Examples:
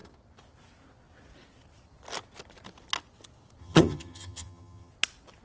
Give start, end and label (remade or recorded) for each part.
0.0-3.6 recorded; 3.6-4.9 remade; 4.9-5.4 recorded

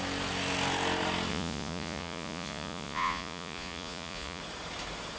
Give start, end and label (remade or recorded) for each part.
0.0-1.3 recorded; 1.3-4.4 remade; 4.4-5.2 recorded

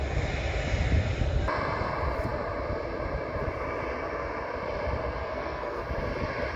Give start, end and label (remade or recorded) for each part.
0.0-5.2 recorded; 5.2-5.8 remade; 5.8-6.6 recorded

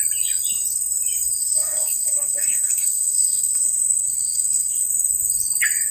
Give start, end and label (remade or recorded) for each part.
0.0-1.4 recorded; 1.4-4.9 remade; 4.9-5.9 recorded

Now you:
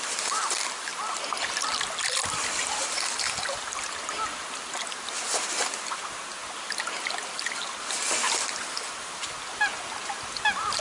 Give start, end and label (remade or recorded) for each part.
0.0-10.8 recorded

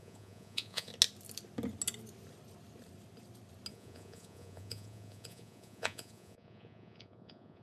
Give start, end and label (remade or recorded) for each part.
0.0-0.9 remade; 0.9-3.7 recorded; 3.7-7.6 remade

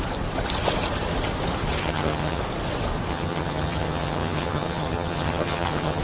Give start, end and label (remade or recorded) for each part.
0.0-1.8 recorded; 1.8-2.4 remade; 2.4-3.1 recorded; 3.1-6.0 remade

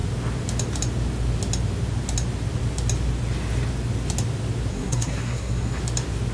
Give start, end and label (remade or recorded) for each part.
0.0-4.7 recorded; 4.7-5.8 remade; 5.8-6.3 recorded